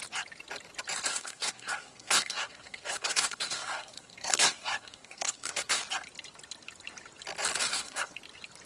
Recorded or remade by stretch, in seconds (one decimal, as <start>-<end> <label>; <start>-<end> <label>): 0.0-1.1 recorded; 1.1-5.8 remade; 5.8-7.7 recorded; 7.7-8.2 remade; 8.2-8.7 recorded